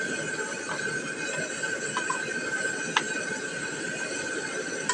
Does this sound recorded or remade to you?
recorded